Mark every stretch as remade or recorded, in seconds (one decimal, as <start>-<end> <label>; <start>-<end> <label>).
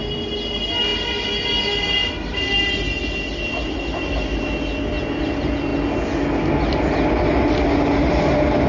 0.0-8.7 recorded